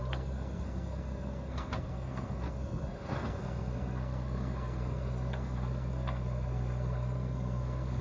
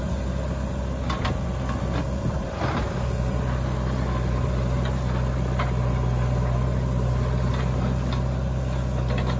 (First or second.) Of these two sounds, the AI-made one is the first